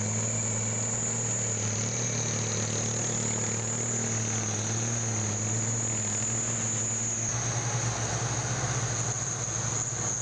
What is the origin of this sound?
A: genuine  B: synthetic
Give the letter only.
A